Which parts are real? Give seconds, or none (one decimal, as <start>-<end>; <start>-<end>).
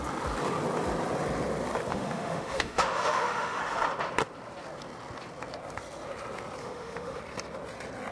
0.0-1.9; 3.6-6.6; 7.2-8.1